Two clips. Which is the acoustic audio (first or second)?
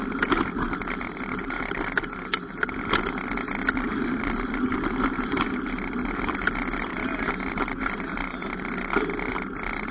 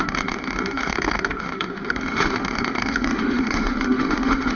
first